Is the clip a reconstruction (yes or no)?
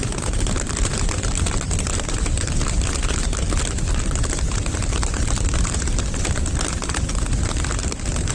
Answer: yes